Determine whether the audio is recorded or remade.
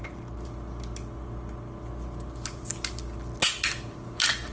recorded